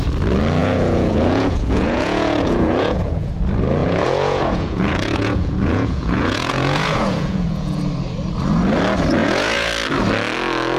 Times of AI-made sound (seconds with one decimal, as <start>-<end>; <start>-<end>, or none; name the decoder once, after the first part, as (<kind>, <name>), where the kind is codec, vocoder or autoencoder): 0.6-3.3 (vocoder, Vocos); 3.8-7.8; 9.2-9.7